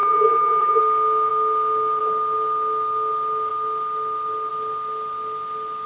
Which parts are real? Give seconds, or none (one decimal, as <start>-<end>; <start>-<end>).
0.8-5.9